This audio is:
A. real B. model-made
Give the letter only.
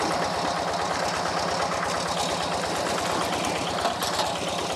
A